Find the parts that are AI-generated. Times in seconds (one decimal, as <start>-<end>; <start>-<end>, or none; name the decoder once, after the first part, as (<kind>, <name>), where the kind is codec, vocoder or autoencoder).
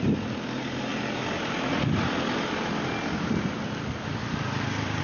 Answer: 4.2-5.0 (vocoder, BigVGAN v2)